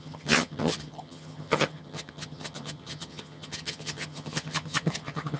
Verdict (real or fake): fake